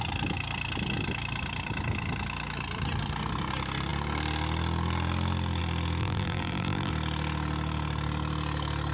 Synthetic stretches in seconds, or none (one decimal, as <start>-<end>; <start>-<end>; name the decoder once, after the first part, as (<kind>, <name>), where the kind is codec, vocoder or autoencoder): 6.0-6.9 (vocoder, BigVGAN v2)